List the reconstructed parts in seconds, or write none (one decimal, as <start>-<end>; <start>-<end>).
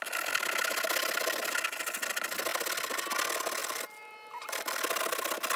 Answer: none